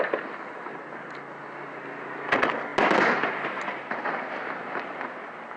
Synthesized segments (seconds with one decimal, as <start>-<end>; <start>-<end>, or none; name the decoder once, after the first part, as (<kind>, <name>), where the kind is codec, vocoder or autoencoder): none

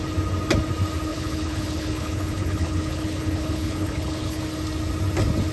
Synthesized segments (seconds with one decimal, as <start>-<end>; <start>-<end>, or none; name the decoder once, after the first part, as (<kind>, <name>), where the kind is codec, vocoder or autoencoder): 1.1-4.4 (codec, HILCodec)

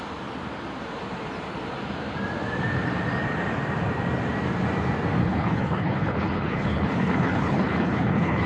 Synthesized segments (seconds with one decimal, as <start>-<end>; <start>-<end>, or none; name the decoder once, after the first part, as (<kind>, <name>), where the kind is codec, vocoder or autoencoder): 5.2-8.5 (codec, HILCodec)